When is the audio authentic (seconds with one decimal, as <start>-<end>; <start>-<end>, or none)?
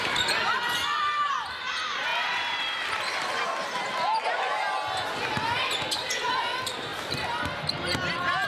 0.0-8.5